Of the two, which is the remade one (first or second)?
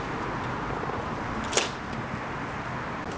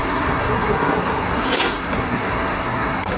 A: second